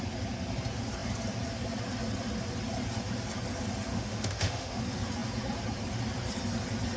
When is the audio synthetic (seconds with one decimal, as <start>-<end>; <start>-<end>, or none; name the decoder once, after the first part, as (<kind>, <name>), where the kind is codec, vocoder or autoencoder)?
3.9-4.8 (autoencoder, DAC-VAE)